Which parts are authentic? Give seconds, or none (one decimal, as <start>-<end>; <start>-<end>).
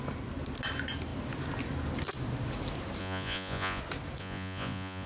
0.0-3.0; 3.8-4.2